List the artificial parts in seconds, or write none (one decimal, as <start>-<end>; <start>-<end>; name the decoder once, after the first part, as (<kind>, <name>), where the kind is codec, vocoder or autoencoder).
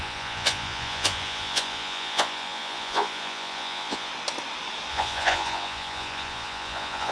0.0-4.1 (vocoder, Vocos); 4.9-7.1